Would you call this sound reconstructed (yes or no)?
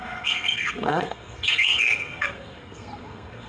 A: yes